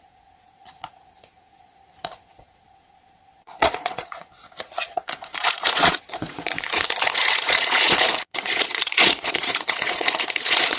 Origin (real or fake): fake